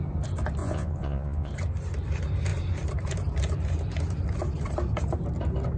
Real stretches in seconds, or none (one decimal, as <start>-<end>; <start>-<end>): 0.0-0.6; 1.5-5.8